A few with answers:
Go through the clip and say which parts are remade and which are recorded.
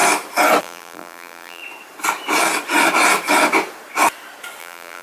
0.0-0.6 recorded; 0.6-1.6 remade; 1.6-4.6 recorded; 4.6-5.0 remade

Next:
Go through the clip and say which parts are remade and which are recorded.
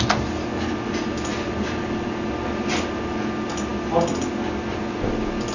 0.0-5.5 recorded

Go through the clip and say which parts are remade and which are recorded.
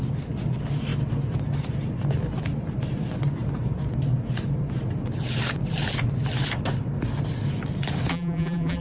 0.0-8.1 recorded; 8.1-8.8 remade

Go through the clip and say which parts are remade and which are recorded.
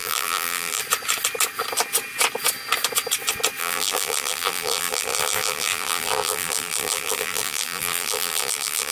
0.0-0.8 remade; 0.8-3.6 recorded; 3.6-8.9 remade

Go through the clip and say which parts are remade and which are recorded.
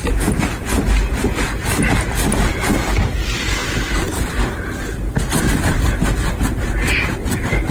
0.0-7.7 recorded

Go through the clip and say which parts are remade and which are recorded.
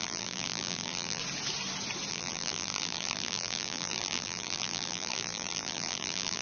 0.0-1.2 remade; 1.2-2.1 recorded; 2.1-6.4 remade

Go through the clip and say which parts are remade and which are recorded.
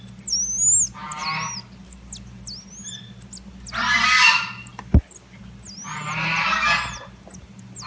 0.0-7.9 recorded